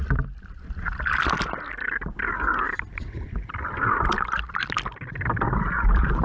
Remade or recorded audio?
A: recorded